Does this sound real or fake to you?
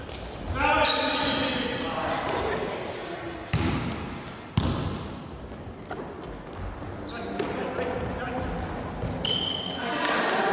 real